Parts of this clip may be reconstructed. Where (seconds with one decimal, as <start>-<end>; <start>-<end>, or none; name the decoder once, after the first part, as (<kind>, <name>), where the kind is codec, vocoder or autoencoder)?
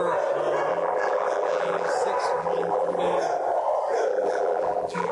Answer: 0.7-1.9 (vocoder, BigVGAN v2); 2.4-3.0; 4.1-5.1